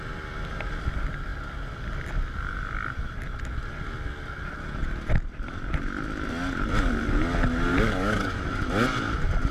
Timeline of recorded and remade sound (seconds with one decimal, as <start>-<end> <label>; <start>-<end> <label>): 0.0-7.7 recorded; 7.7-8.4 remade; 8.4-9.5 recorded

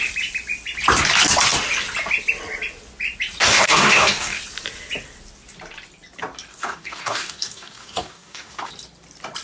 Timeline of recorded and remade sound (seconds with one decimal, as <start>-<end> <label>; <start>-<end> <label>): 0.0-3.4 recorded; 3.4-4.4 remade; 4.4-6.5 recorded; 6.5-8.7 remade; 8.7-9.4 recorded

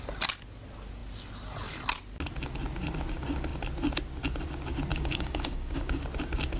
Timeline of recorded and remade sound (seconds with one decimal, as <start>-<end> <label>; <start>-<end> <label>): 0.0-4.9 recorded; 4.9-6.0 remade; 6.0-6.6 recorded

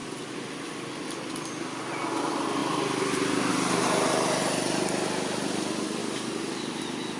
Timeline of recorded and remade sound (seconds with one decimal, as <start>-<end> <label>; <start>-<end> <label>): 0.0-6.0 recorded; 6.0-6.8 remade; 6.8-7.2 recorded